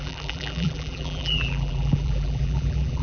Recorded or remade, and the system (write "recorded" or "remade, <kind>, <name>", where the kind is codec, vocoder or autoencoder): remade, vocoder, BigVGAN v2